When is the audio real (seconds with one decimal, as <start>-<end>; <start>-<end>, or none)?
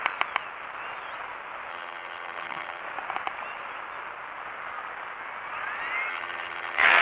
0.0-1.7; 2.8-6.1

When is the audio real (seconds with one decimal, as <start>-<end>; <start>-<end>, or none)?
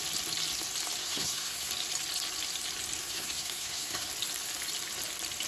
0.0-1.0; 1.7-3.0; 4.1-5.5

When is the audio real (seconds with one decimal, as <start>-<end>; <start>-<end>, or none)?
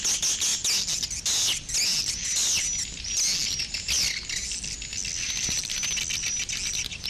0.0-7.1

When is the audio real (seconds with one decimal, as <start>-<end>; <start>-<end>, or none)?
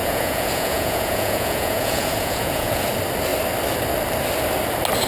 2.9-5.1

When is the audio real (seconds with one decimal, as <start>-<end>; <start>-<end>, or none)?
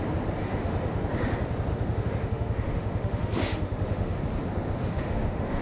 0.0-0.4; 1.0-1.7; 4.2-4.8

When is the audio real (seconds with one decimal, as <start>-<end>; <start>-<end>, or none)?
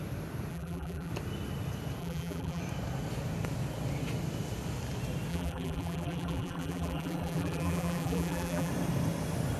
0.0-0.5; 1.1-2.0; 2.6-5.3; 8.7-9.6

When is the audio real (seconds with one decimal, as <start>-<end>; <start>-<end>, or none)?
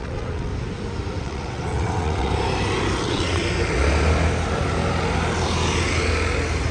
0.5-1.2; 2.3-3.0; 3.4-6.7